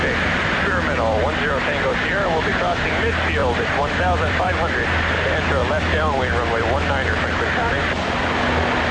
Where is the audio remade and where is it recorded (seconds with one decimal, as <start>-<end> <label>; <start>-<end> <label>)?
0.0-3.4 recorded; 3.4-4.5 remade; 4.5-5.6 recorded; 5.6-7.1 remade; 7.1-8.9 recorded